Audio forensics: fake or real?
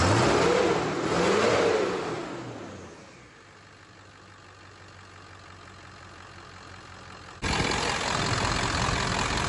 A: real